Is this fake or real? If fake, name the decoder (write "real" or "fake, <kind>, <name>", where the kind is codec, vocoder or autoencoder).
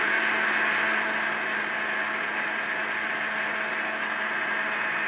real